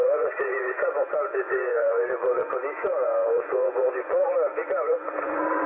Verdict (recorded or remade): remade